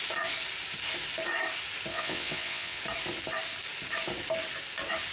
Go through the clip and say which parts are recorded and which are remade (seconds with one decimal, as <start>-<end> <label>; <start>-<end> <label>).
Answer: 0.0-1.9 recorded; 1.9-2.8 remade; 2.8-5.1 recorded

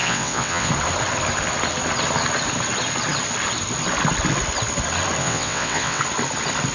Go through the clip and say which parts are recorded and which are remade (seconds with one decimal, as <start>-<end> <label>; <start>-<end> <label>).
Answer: 0.0-0.7 remade; 0.7-5.2 recorded; 5.2-6.0 remade; 6.0-6.7 recorded

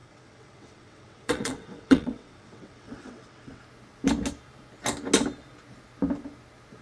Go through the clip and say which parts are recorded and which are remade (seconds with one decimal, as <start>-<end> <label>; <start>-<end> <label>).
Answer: 0.0-3.6 remade; 3.6-6.8 recorded

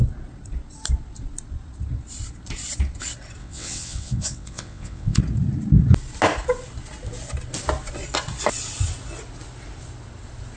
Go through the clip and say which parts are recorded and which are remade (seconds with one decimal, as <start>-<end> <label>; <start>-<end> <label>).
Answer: 0.0-3.4 recorded; 3.4-5.2 remade; 5.2-10.6 recorded

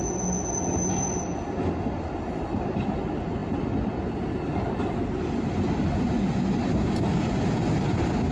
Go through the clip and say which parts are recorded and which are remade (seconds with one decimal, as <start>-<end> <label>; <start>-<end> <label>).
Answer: 0.0-8.3 recorded

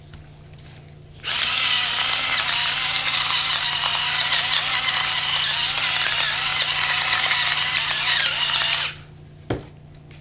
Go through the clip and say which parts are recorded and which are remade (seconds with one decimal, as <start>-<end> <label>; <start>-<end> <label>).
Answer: 0.0-10.2 recorded